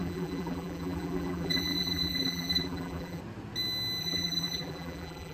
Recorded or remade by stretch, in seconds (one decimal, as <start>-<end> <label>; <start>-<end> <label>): 0.0-3.2 remade; 3.2-4.0 recorded; 4.0-5.3 remade